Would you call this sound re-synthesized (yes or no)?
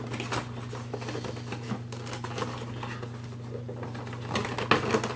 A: no